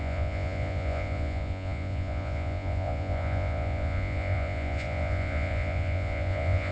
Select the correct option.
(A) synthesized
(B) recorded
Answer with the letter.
A